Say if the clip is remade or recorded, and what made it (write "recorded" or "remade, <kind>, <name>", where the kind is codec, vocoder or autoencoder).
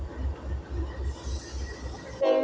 recorded